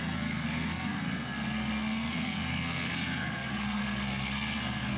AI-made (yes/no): yes